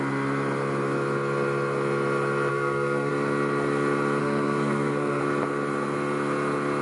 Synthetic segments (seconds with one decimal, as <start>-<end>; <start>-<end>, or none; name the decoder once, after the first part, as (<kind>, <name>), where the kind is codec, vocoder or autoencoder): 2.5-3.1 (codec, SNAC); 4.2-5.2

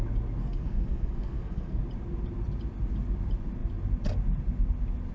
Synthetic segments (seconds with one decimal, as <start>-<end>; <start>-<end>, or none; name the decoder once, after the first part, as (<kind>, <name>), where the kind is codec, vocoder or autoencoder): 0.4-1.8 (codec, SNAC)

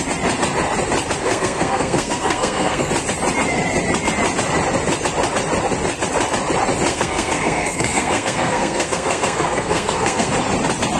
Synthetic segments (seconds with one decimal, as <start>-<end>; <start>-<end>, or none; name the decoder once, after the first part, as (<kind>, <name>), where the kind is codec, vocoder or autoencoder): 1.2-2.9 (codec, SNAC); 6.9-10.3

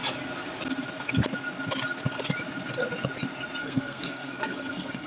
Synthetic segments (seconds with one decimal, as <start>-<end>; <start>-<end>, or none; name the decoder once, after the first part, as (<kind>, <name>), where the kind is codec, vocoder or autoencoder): 3.6-5.1 (codec, SNAC)

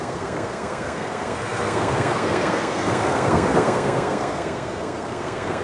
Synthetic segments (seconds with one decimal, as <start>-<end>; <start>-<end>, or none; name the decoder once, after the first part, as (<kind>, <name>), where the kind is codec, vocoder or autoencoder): 0.0-5.6 (codec, SNAC)